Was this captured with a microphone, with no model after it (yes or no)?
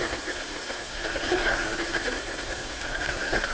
no